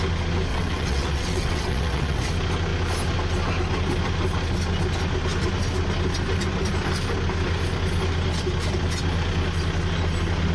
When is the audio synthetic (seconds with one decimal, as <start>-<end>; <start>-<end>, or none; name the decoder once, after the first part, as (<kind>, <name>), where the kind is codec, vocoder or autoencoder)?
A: 0.5-2.3 (vocoder, WaveNeXt)